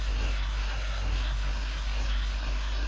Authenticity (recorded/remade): remade